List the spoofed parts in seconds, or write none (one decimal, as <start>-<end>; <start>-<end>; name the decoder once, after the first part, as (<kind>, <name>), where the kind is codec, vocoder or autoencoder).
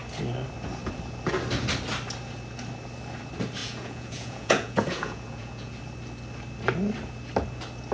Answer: 3.6-5.8 (vocoder, Vocos)